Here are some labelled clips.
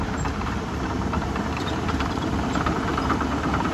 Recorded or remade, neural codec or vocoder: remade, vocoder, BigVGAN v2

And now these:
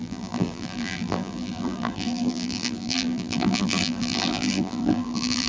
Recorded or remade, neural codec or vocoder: remade, vocoder, BigVGAN v2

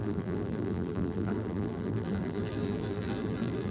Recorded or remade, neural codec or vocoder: remade, vocoder, BigVGAN v2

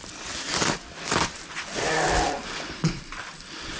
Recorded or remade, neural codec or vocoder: remade, vocoder, BigVGAN v2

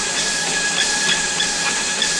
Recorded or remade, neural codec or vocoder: recorded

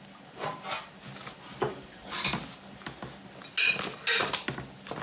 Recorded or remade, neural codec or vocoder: recorded